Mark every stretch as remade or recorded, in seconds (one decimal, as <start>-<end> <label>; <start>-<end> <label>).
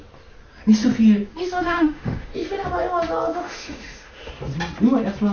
0.0-1.3 recorded; 1.3-2.3 remade; 2.3-3.3 recorded; 3.3-4.3 remade; 4.3-5.3 recorded